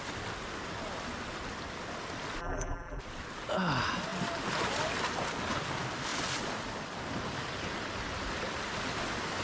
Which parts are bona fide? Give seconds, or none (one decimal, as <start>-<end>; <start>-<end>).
0.0-2.4; 3.0-9.4

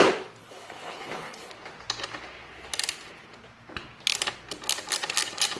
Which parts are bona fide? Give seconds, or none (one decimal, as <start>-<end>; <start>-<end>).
0.0-0.4; 1.5-5.6

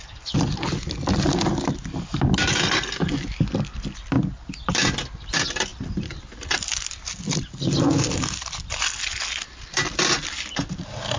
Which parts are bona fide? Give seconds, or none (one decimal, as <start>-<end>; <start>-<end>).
0.0-11.2

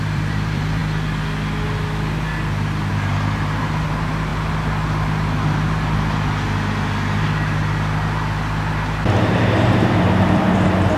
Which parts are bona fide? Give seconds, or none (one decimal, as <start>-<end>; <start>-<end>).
0.8-2.9; 4.3-9.2

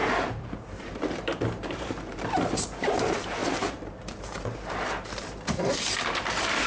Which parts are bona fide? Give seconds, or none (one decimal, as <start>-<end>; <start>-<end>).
none

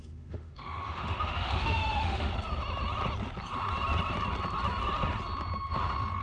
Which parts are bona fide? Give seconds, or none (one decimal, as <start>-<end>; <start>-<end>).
2.3-6.2

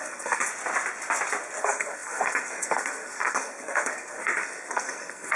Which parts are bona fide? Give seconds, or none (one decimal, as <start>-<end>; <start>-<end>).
0.5-1.6

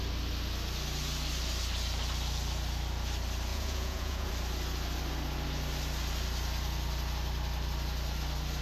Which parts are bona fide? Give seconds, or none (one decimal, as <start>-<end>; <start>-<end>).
0.0-3.5; 4.3-8.6